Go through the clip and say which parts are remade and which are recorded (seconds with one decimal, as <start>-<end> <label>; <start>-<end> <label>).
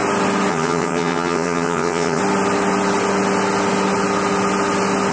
0.0-0.5 recorded; 0.5-2.2 remade; 2.2-5.1 recorded